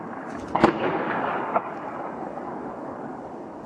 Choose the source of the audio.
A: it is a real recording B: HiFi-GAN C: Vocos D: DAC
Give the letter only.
D